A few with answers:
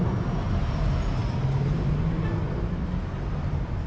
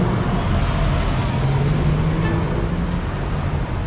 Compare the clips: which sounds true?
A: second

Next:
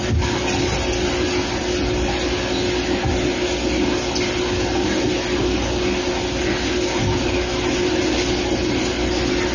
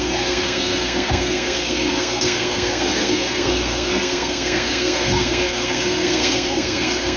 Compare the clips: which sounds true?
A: first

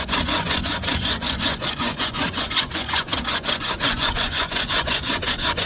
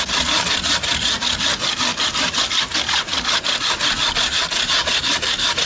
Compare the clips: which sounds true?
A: second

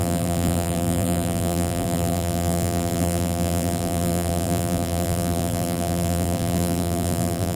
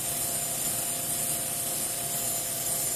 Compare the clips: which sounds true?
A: second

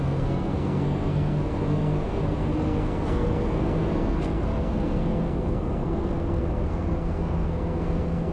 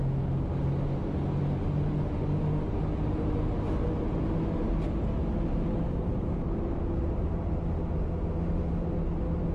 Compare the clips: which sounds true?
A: second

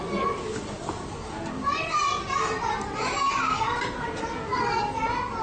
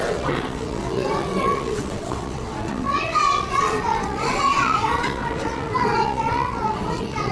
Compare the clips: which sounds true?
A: first